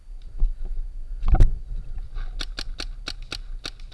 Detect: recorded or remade recorded